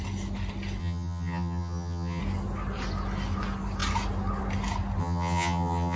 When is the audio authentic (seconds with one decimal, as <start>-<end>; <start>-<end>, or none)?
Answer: 0.0-0.8; 2.2-5.0

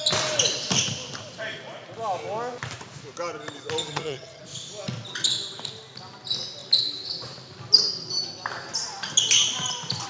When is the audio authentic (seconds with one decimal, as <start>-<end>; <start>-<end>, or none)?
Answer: 0.0-3.8; 4.4-10.1